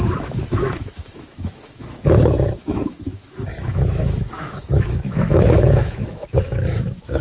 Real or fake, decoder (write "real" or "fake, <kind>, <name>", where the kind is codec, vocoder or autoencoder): fake, autoencoder, DAC-VAE